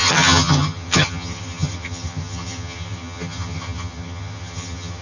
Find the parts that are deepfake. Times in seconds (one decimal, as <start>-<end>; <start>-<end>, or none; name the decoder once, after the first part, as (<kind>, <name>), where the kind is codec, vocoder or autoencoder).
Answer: 0.0-5.0 (vocoder, HiFi-GAN)